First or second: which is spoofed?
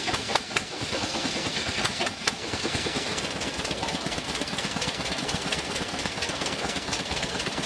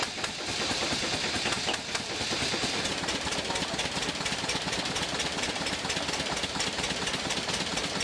first